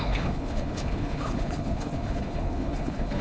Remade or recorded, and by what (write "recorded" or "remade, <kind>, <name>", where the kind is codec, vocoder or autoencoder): remade, codec, HILCodec